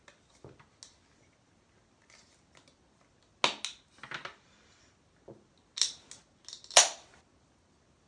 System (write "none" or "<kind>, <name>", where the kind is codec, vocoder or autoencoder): none